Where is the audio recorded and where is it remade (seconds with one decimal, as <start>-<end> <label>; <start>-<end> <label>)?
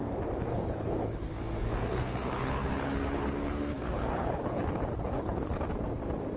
0.0-0.5 recorded; 0.5-1.3 remade; 1.3-1.9 recorded; 1.9-5.7 remade; 5.7-6.4 recorded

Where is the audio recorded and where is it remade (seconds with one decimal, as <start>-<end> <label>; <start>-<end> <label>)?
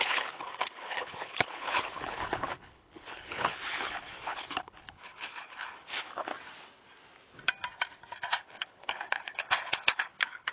0.0-6.3 remade; 6.3-8.4 recorded; 8.4-10.5 remade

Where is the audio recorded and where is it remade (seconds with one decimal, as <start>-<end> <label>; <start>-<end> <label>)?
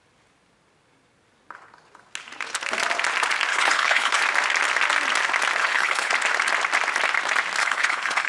0.0-3.5 recorded; 3.5-4.2 remade; 4.2-5.6 recorded; 5.6-6.1 remade; 6.1-7.6 recorded; 7.6-8.3 remade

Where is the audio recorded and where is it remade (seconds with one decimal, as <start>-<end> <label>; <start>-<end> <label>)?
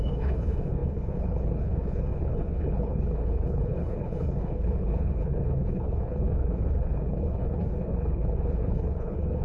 0.0-9.4 remade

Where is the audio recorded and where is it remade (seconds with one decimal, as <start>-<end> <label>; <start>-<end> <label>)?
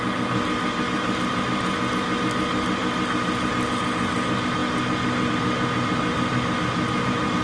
0.0-7.4 recorded